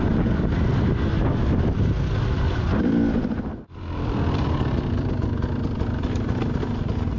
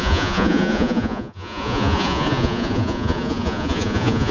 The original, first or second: first